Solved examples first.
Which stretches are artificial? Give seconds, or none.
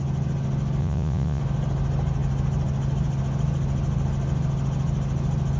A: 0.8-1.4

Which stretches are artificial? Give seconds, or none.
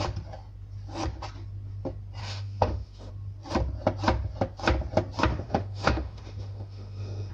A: 2.2-3.1; 5.3-7.3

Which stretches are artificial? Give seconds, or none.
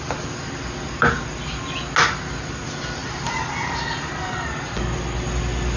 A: 3.0-4.5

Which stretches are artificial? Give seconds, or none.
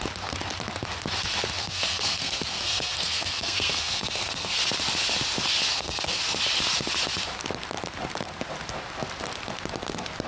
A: 1.6-4.6; 5.7-6.2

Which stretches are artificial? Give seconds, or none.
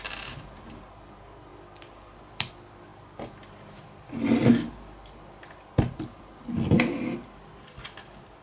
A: none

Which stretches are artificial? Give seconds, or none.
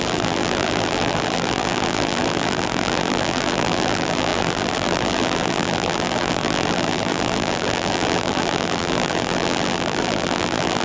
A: 0.0-10.8